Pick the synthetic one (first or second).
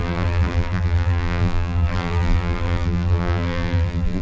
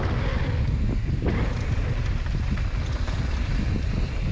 first